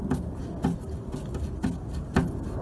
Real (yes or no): yes